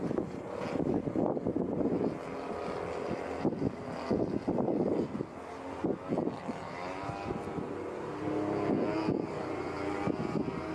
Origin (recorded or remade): recorded